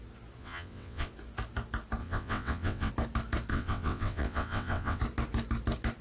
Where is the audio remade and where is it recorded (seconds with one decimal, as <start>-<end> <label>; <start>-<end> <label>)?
0.0-0.4 recorded; 0.4-1.1 remade; 1.1-2.0 recorded; 2.0-2.9 remade; 2.9-3.5 recorded; 3.5-5.0 remade; 5.0-6.0 recorded